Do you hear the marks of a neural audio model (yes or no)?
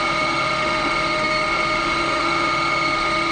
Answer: yes